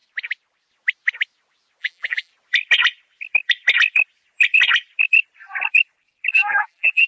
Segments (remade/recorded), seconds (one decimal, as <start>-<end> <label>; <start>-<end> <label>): 0.0-1.8 recorded; 1.8-2.3 remade; 2.3-6.3 recorded; 6.3-7.1 remade